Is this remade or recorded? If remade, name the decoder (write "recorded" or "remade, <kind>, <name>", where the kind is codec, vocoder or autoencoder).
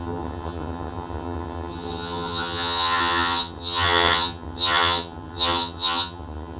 remade, vocoder, HiFi-GAN